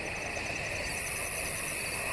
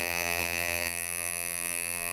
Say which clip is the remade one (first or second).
second